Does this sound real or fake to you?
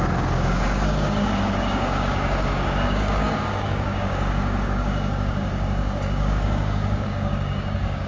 fake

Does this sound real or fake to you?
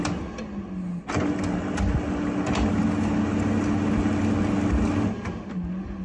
real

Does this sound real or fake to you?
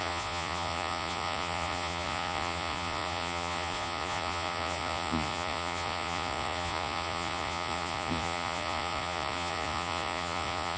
fake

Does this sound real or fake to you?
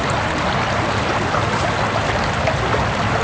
real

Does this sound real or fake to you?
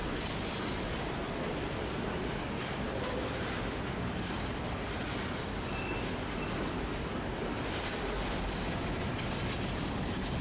real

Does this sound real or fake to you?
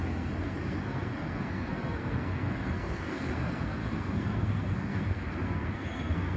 fake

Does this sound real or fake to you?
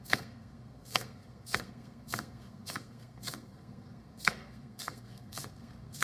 fake